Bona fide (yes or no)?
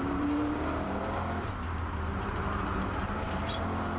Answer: no